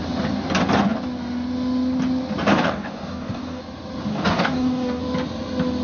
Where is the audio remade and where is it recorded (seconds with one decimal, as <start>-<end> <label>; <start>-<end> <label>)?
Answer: 0.0-2.5 recorded; 2.5-3.6 remade; 3.6-4.1 recorded; 4.1-5.0 remade; 5.0-5.8 recorded